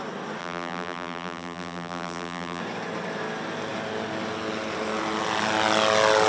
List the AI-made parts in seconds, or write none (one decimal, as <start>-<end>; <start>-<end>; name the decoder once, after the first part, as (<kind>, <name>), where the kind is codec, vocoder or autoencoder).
0.4-2.6 (vocoder, BigVGAN v2)